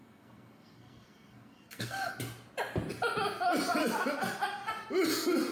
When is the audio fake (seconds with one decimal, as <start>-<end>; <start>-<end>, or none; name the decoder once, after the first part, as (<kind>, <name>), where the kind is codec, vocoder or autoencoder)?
0.0-2.1 (codec, SNAC)